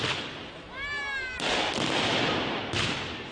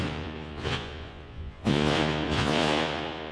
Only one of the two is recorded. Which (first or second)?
first